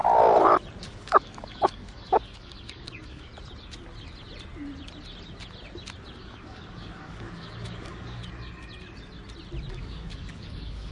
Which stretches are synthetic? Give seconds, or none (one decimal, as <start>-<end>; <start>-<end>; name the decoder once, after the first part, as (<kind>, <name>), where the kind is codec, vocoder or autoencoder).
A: 0.8-3.3 (codec, DAC); 6.2-8.2; 9.7-10.9